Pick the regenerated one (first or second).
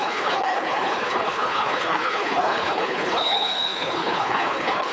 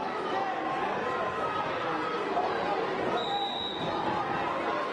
first